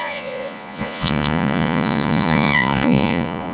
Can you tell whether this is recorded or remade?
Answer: remade